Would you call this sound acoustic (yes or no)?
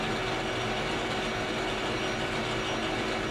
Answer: yes